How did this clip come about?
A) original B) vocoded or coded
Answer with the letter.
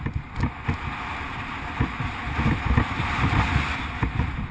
A